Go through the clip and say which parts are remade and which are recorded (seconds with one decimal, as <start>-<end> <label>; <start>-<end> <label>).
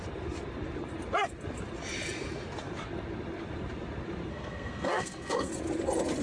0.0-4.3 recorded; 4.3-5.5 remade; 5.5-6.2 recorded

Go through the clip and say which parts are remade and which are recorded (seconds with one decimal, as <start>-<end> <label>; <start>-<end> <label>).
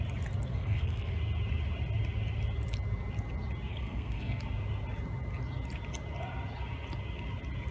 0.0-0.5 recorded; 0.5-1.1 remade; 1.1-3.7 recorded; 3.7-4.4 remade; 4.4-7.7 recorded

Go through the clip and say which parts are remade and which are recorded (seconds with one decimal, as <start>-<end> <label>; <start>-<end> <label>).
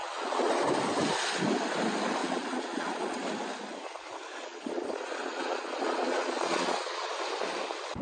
0.0-0.5 remade; 0.5-2.2 recorded; 2.2-3.2 remade; 3.2-4.4 recorded; 4.4-7.1 remade; 7.1-8.0 recorded